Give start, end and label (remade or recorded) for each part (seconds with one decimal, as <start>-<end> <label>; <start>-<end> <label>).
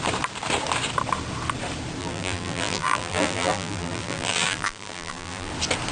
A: 0.0-2.0 recorded; 2.0-5.5 remade; 5.5-5.9 recorded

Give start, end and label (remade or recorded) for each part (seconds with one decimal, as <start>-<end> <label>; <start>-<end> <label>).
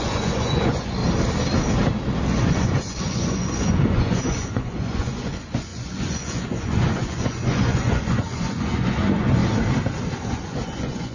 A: 0.0-1.0 remade; 1.0-2.3 recorded; 2.3-9.4 remade; 9.4-10.3 recorded; 10.3-11.1 remade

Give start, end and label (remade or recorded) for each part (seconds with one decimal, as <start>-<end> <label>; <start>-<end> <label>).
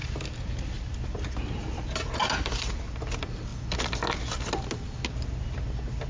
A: 0.0-6.1 recorded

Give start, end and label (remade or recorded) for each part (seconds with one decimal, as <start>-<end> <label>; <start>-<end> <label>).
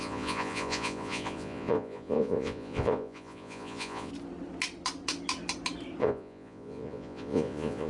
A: 0.0-4.1 remade; 4.1-6.0 recorded; 6.0-7.9 remade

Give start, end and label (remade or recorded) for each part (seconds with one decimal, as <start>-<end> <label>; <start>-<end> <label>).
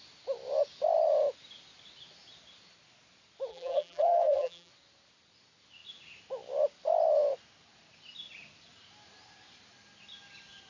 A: 0.0-3.5 recorded; 3.5-4.7 remade; 4.7-10.7 recorded